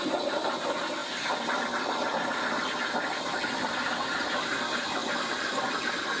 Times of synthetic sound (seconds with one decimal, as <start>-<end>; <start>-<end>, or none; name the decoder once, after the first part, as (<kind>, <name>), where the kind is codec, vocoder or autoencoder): 1.0-2.6 (vocoder, BigVGAN v2)